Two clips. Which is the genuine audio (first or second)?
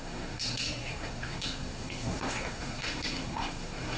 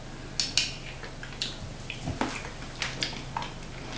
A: second